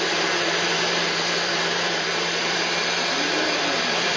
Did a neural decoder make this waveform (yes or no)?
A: yes